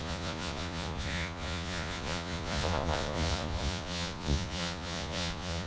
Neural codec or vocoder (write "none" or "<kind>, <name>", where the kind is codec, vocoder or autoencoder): vocoder, Vocos